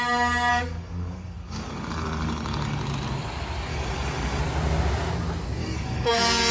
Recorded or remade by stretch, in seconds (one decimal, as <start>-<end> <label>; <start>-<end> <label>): 0.0-0.5 recorded; 0.5-2.8 remade; 2.8-3.7 recorded; 3.7-4.4 remade; 4.4-5.6 recorded; 5.6-6.1 remade; 6.1-6.5 recorded